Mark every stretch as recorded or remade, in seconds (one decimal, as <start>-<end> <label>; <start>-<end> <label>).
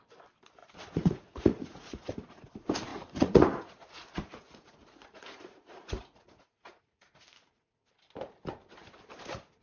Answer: 0.0-0.6 recorded; 0.6-2.5 remade; 2.5-2.9 recorded; 2.9-7.6 remade; 7.6-9.6 recorded